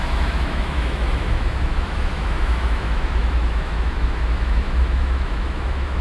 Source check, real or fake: fake